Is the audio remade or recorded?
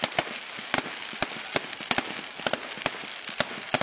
recorded